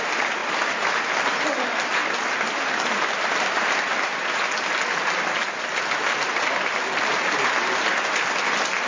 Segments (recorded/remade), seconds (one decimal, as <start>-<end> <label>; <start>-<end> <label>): 0.0-8.9 recorded